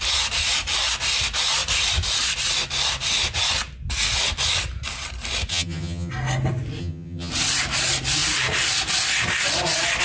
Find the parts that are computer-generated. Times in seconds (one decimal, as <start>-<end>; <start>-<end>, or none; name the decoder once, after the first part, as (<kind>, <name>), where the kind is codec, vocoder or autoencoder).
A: 5.5-6.1 (vocoder, HiFi-GAN); 6.8-7.3